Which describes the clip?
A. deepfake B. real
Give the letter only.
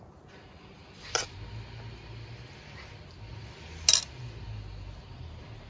B